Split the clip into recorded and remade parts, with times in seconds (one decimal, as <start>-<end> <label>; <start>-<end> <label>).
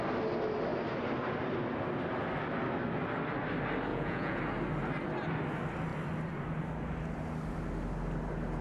0.0-3.9 recorded; 3.9-4.4 remade; 4.4-8.6 recorded